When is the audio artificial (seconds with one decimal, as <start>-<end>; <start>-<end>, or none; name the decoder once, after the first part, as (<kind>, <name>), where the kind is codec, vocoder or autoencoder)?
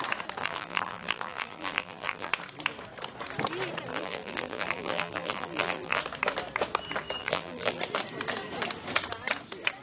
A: 0.4-2.3 (vocoder, BigVGAN v2); 3.9-6.0; 7.2-7.8